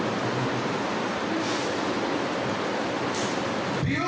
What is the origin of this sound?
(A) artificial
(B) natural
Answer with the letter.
B